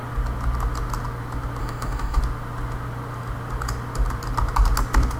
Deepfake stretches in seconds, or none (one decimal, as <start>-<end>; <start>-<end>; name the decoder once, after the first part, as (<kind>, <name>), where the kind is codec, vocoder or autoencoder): 1.6-2.2 (autoencoder, DAC-VAE)